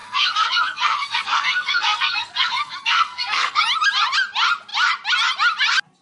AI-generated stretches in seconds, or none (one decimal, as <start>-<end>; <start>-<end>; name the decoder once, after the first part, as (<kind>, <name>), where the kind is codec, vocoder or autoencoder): 0.0-3.6 (codec, SNAC)